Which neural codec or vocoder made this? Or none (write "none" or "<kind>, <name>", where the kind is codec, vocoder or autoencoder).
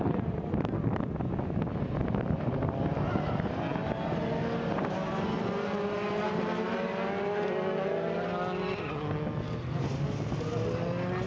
none